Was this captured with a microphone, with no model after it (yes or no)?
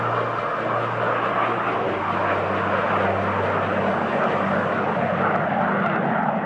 yes